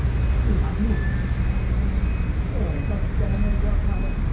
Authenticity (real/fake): real